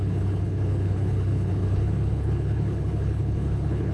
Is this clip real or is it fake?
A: fake